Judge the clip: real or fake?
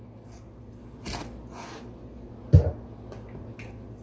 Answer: real